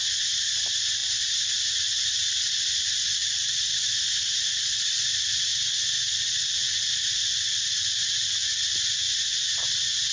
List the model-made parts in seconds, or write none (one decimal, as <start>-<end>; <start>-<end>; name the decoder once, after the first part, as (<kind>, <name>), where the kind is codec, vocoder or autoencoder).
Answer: 0.0-5.5 (vocoder, BigVGAN v2); 9.5-10.1